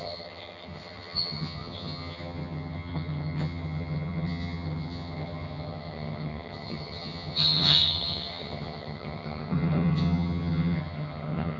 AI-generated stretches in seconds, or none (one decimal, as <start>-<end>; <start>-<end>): 0.0-11.6